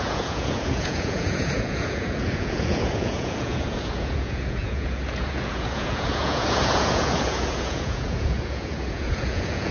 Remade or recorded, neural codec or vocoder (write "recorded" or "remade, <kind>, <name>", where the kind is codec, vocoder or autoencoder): remade, vocoder, Vocos